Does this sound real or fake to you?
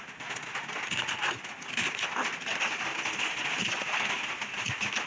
real